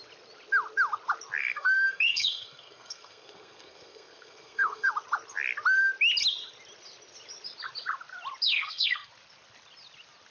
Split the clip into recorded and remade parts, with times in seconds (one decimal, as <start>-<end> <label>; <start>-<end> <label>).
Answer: 0.0-1.4 recorded; 1.4-4.9 remade; 4.9-8.5 recorded; 8.5-9.1 remade; 9.1-10.3 recorded

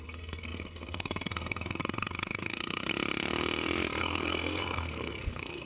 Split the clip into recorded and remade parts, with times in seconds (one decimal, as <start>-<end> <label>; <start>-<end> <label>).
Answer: 0.0-2.9 remade; 2.9-4.0 recorded; 4.0-5.7 remade

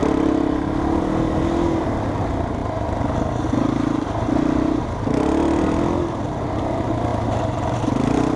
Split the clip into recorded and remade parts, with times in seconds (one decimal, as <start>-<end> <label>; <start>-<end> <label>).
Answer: 0.0-8.4 recorded

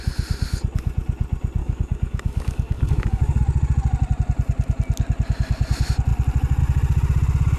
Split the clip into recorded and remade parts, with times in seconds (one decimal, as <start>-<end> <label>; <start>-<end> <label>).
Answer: 0.0-1.6 recorded; 1.6-3.4 remade; 3.4-7.6 recorded

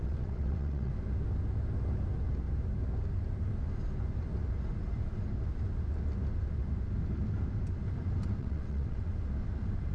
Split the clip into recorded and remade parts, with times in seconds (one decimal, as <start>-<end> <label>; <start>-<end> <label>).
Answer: 0.0-0.9 remade; 0.9-8.4 recorded; 8.4-9.1 remade; 9.1-9.9 recorded

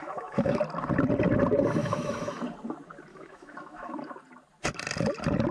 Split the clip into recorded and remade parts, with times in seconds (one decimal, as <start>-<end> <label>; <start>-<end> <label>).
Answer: 0.0-0.6 remade; 0.6-1.8 recorded; 1.8-2.4 remade; 2.4-3.1 recorded; 3.1-4.0 remade; 4.0-5.5 recorded